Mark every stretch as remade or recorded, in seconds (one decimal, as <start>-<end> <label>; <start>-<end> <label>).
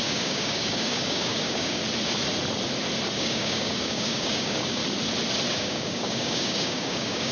0.0-1.8 remade; 1.8-3.1 recorded; 3.1-4.8 remade; 4.8-5.5 recorded; 5.5-7.3 remade